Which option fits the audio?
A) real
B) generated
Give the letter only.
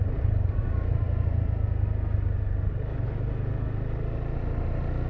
A